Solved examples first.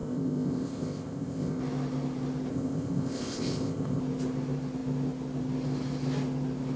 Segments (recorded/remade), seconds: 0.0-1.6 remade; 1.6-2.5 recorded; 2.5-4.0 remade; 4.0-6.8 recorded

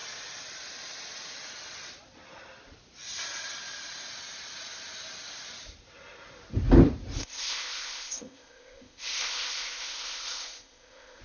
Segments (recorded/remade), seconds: 0.0-7.2 recorded; 7.2-11.2 remade

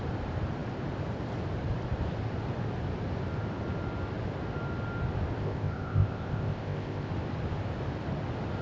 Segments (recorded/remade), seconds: 0.0-5.4 recorded; 5.4-7.1 remade; 7.1-8.6 recorded

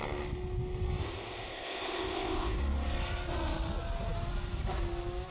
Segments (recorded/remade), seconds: 0.0-1.0 recorded; 1.0-2.6 remade; 2.6-5.3 recorded

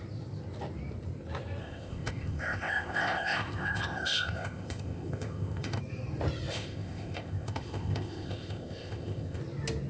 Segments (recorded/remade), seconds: 0.0-1.6 recorded; 1.6-5.8 remade; 5.8-6.5 recorded; 6.5-9.4 remade; 9.4-9.9 recorded

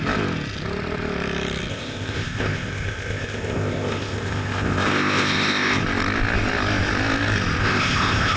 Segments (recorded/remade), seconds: 0.0-1.7 recorded; 1.7-5.8 remade; 5.8-7.6 recorded; 7.6-8.4 remade

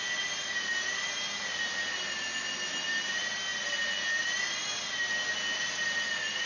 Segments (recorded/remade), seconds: 0.0-6.5 recorded

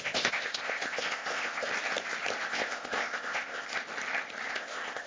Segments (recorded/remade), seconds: 0.0-1.7 remade; 1.7-2.5 recorded; 2.5-3.7 remade; 3.7-4.5 recorded; 4.5-5.1 remade